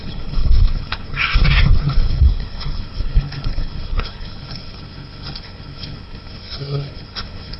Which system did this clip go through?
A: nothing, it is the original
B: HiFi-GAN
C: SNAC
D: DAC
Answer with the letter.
C